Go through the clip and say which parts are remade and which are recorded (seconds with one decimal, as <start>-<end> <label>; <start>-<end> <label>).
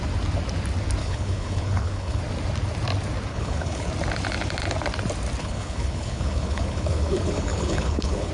0.0-1.0 recorded; 1.0-2.2 remade; 2.2-3.3 recorded; 3.3-3.9 remade; 3.9-5.4 recorded; 5.4-8.3 remade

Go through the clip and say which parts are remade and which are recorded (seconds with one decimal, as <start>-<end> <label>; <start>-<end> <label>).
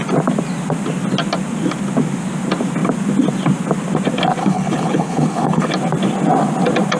0.0-4.4 recorded; 4.4-5.7 remade; 5.7-7.0 recorded